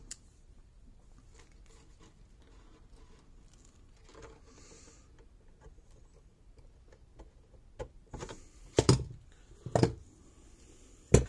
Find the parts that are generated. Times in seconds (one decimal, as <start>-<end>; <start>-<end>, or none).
0.0-1.0